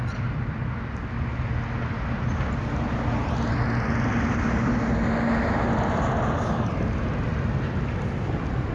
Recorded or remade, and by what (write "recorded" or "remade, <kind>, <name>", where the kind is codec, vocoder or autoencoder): recorded